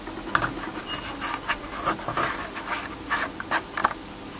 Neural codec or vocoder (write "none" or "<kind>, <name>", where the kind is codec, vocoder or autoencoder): none